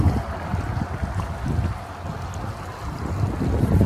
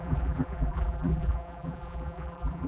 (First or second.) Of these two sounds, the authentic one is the first